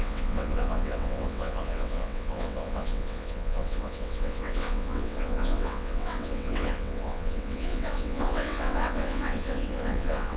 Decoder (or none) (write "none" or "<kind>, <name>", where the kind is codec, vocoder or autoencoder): vocoder, WaveNeXt